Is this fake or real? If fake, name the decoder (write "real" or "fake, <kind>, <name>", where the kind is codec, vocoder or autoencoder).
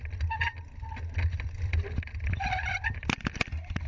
real